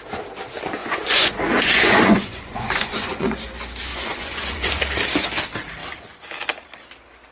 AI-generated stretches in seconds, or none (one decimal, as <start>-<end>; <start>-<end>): 0.8-3.4; 3.9-4.8